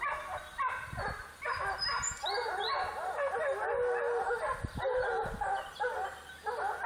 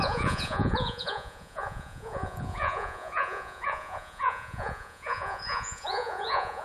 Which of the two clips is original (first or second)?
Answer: first